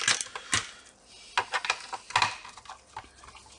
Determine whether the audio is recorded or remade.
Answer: recorded